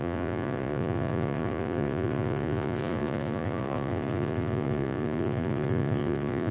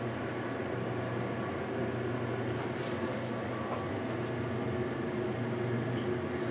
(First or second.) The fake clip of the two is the first